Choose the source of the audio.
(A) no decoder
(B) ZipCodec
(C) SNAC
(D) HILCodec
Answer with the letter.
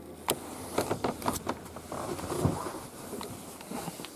A